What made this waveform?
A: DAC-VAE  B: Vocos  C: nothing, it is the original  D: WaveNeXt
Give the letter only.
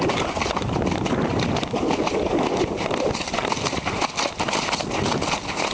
C